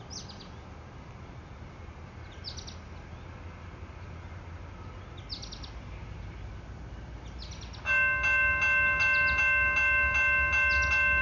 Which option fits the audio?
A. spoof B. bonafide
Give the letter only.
B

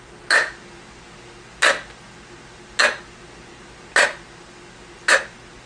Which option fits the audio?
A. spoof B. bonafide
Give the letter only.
B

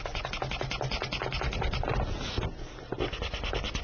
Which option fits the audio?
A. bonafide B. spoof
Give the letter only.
A